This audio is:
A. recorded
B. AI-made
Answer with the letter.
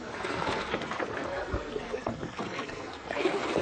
B